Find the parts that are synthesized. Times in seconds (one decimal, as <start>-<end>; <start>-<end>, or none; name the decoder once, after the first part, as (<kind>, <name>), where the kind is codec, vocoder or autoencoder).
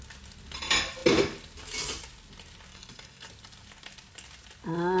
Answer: 2.7-3.3 (codec, DAC)